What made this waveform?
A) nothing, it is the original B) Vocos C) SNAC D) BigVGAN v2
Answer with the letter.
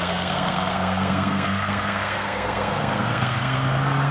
C